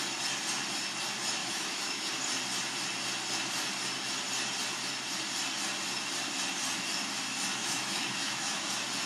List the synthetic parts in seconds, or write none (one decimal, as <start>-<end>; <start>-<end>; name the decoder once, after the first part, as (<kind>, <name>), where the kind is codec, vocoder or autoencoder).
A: 1.4-2.1 (autoencoder, DAC-VAE); 7.6-8.7